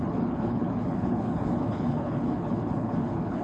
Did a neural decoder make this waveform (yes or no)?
yes